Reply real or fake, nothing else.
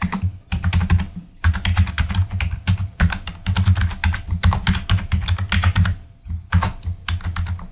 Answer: real